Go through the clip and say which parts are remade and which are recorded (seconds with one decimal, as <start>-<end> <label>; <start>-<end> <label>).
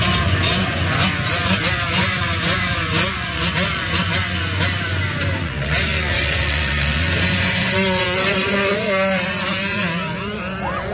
0.0-10.9 remade